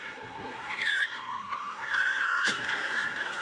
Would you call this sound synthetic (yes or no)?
yes